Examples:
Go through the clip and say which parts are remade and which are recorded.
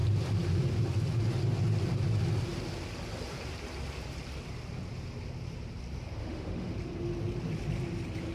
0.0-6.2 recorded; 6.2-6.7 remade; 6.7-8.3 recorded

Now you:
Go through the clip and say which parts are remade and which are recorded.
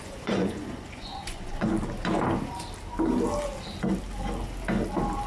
0.0-1.7 remade; 1.7-5.3 recorded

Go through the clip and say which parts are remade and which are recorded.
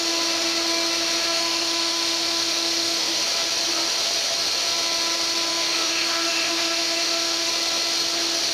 0.0-1.3 recorded; 1.3-3.2 remade; 3.2-5.5 recorded; 5.5-7.5 remade; 7.5-8.5 recorded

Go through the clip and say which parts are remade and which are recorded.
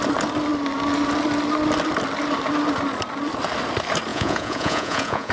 0.0-4.1 recorded; 4.1-5.3 remade